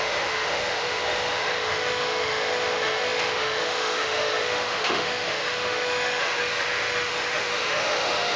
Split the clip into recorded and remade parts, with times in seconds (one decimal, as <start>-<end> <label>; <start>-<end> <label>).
0.0-8.4 remade